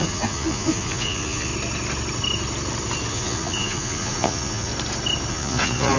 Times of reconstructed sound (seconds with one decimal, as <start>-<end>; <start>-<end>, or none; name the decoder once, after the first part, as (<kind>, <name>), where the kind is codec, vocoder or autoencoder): 0.0-1.5 (vocoder, Vocos); 3.1-4.7; 5.3-6.0

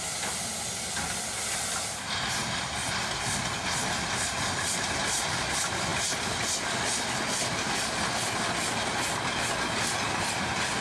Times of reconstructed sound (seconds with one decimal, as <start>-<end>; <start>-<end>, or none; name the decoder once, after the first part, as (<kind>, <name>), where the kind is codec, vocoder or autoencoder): none